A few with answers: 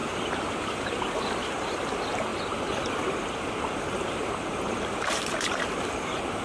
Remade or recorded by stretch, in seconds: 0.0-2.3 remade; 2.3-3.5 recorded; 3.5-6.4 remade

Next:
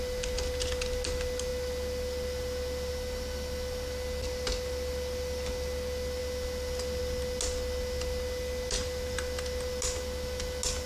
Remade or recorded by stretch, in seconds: 0.0-10.9 recorded

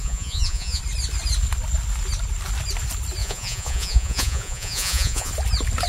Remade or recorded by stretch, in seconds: 0.0-0.8 remade; 0.8-3.2 recorded; 3.2-5.3 remade; 5.3-5.9 recorded

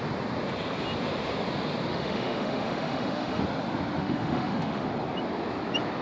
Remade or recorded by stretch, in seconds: 0.0-1.9 recorded; 1.9-3.4 remade; 3.4-4.0 recorded; 4.0-4.9 remade; 4.9-6.0 recorded

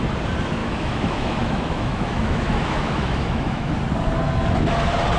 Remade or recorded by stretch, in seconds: 0.0-0.6 recorded; 0.6-3.7 remade; 3.7-5.2 recorded

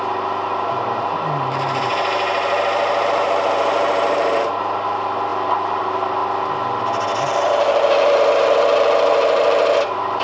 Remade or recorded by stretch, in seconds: 0.0-6.2 remade; 6.2-7.2 recorded; 7.2-10.2 remade

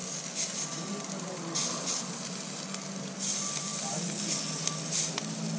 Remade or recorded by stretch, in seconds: 0.0-5.6 recorded